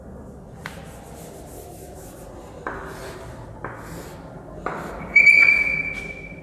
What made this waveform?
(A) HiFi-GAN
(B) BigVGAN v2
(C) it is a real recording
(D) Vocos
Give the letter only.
C